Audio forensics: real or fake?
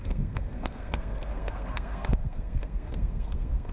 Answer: fake